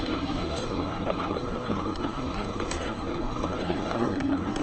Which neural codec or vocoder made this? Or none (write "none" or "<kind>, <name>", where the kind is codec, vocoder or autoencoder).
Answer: codec, SNAC